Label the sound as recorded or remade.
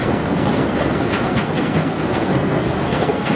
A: remade